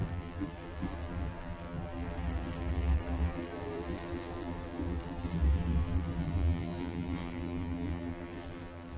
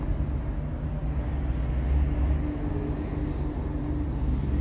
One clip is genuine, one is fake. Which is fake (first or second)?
first